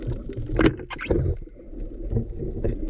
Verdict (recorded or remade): recorded